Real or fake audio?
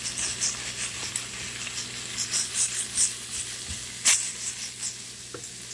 real